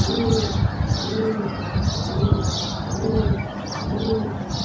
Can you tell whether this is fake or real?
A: real